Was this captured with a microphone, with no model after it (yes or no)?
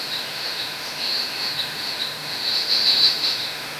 no